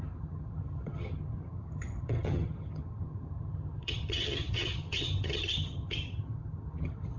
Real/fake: fake